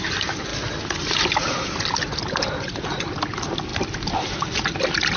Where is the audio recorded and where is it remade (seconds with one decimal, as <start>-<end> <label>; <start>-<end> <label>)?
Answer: 0.0-5.2 recorded